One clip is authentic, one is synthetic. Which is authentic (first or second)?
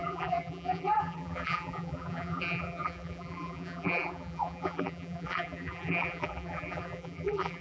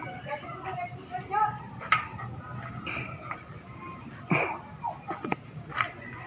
second